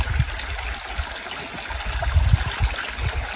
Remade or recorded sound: recorded